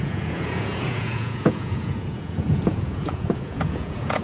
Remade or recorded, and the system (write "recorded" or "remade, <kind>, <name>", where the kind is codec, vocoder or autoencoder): remade, vocoder, Vocos